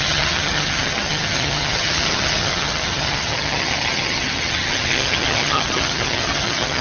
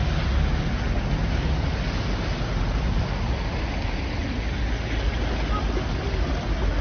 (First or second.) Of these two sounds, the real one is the second